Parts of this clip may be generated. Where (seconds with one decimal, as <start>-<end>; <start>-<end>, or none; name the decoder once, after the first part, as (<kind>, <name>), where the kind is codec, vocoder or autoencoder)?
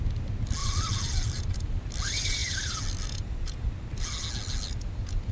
0.6-1.4 (vocoder, BigVGAN v2)